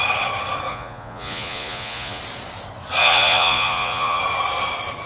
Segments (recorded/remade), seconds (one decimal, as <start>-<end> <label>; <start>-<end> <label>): 0.0-0.7 recorded; 0.7-2.2 remade; 2.2-3.0 recorded; 3.0-4.2 remade; 4.2-5.1 recorded